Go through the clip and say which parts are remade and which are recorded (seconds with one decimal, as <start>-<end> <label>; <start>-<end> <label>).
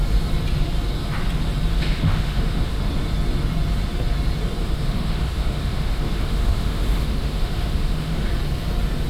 0.0-1.7 recorded; 1.7-2.8 remade; 2.8-4.6 recorded; 4.6-8.2 remade; 8.2-9.1 recorded